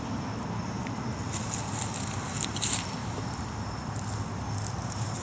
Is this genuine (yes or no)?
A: yes